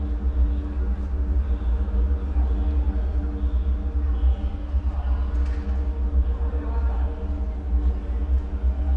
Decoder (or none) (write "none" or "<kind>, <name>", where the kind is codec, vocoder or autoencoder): none